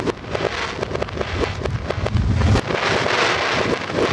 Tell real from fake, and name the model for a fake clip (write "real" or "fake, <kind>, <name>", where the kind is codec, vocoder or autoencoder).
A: real